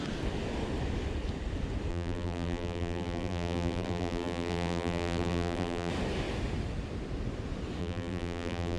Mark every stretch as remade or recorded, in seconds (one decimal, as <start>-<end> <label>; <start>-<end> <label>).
0.0-1.9 recorded; 1.9-5.9 remade; 5.9-7.8 recorded; 7.8-8.8 remade